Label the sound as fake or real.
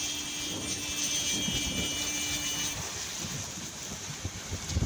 real